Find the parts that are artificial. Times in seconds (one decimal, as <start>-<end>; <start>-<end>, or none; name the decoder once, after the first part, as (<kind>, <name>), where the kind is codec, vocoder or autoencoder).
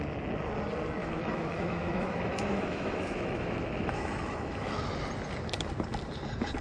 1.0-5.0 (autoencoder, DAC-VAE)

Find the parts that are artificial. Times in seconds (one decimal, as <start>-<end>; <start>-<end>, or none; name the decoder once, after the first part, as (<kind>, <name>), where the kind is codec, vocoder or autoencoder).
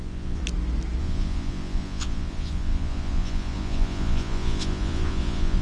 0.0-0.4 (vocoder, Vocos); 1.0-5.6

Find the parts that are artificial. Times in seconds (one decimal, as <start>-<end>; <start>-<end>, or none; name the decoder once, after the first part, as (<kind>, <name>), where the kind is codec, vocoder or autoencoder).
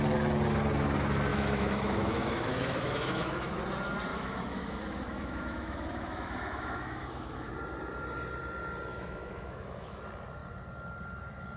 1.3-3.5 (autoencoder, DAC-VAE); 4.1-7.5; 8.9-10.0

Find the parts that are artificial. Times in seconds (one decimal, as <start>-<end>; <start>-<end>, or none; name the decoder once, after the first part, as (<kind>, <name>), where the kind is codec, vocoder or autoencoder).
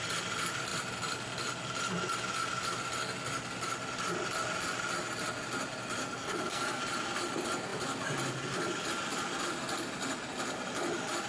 6.0-6.8 (codec, SNAC)